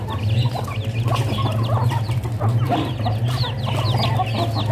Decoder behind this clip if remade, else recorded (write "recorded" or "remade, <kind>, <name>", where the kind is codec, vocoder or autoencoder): recorded